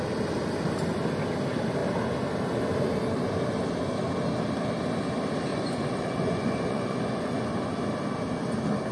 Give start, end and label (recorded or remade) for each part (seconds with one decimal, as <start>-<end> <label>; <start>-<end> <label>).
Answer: 0.0-5.5 recorded; 5.5-7.5 remade; 7.5-8.9 recorded